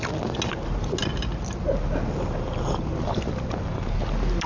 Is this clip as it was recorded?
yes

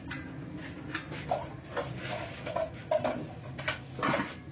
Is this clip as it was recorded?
yes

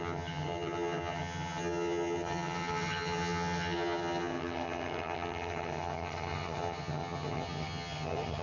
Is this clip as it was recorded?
no